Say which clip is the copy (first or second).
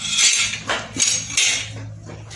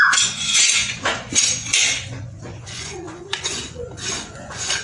second